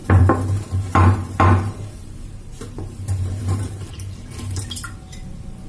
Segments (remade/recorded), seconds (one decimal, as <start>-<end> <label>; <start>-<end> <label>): 0.0-5.7 remade